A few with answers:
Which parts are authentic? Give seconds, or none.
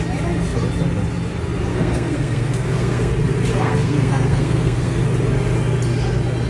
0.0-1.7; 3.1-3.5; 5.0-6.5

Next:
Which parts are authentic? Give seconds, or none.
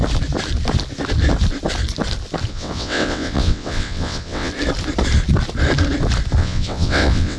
0.0-2.5; 4.5-6.4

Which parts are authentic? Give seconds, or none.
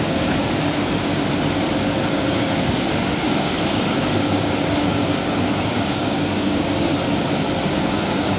1.1-2.1; 6.9-7.8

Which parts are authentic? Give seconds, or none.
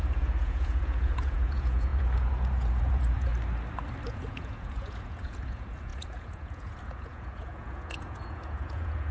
3.3-4.1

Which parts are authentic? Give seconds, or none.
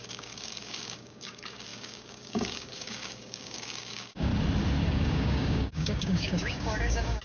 4.3-4.9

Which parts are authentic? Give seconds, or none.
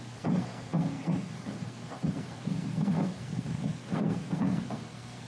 none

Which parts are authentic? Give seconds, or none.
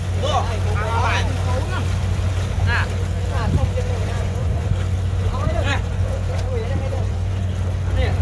0.0-4.0; 4.7-5.2; 6.3-6.9; 7.5-8.2